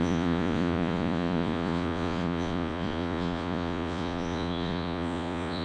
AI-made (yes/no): yes